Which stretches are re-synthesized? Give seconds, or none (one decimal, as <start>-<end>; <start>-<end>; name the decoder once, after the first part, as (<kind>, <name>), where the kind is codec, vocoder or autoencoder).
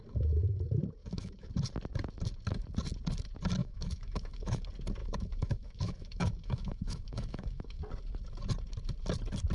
1.0-1.5 (autoencoder, DAC-VAE); 3.6-4.6; 5.0-7.8